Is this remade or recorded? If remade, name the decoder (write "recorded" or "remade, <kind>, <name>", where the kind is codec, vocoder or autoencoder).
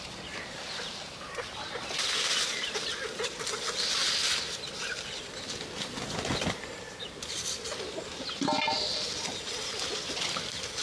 recorded